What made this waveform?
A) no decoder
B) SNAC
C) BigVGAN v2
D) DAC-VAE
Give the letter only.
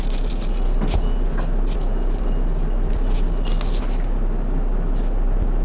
A